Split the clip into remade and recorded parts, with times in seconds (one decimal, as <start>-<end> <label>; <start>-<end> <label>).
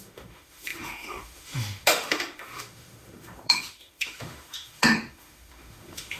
0.0-6.2 remade